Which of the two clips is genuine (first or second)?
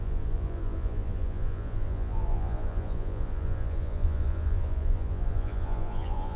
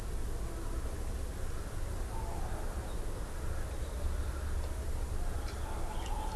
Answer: second